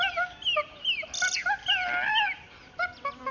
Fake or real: real